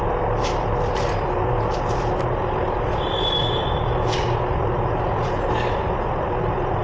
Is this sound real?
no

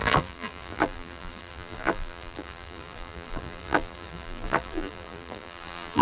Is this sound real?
no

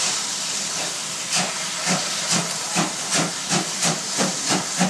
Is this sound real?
no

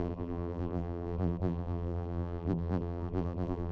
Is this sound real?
no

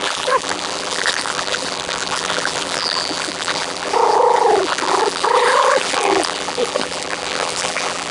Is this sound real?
no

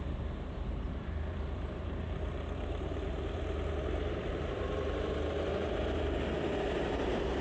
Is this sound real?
no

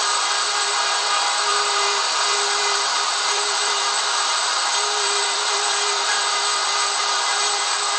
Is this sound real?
no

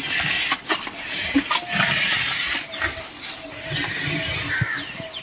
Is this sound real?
yes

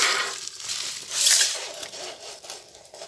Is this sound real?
no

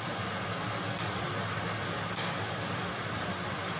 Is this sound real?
no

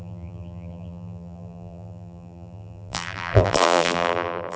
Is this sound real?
no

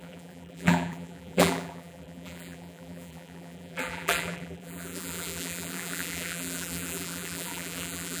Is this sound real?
no